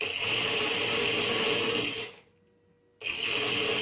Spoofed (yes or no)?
no